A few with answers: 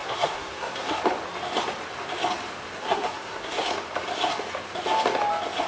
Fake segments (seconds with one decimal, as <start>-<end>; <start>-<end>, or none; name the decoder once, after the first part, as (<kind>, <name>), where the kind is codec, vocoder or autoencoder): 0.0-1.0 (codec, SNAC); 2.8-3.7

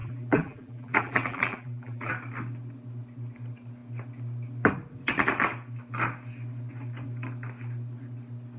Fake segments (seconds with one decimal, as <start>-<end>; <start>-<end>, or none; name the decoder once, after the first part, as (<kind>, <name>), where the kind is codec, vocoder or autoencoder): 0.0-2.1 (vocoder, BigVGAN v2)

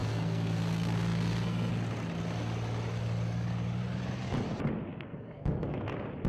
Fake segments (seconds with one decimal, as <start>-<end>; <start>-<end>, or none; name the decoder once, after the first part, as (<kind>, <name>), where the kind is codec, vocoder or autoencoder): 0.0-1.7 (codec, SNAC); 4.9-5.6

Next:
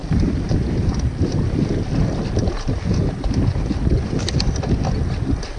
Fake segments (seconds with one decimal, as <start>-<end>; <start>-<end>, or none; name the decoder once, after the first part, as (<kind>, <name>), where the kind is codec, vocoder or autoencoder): none

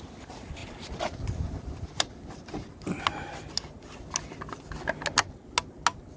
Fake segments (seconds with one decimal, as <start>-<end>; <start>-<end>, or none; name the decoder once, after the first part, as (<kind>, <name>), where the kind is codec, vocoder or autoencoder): none

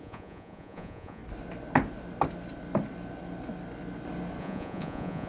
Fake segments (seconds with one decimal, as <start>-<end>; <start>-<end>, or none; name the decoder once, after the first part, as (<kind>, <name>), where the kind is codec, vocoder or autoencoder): 0.0-1.2 (vocoder, Vocos); 4.4-5.3

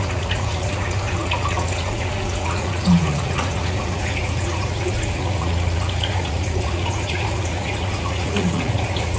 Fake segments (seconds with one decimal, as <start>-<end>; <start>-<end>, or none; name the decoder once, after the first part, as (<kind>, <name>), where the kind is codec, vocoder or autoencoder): 0.0-9.2 (vocoder, Vocos)

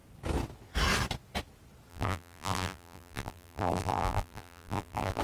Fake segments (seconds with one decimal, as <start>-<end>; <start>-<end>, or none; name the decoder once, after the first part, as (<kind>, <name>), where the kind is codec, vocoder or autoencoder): 1.9-5.2 (vocoder, BigVGAN v2)